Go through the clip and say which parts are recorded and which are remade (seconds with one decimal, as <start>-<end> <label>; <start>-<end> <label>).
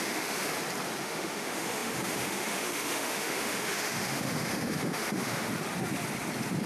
0.0-0.5 remade; 0.5-1.0 recorded; 1.0-5.5 remade; 5.5-6.7 recorded